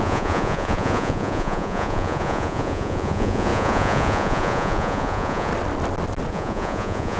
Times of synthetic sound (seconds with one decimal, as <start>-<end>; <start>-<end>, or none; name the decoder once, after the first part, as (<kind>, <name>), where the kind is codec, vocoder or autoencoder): 0.0-5.5 (vocoder, Vocos); 6.3-7.2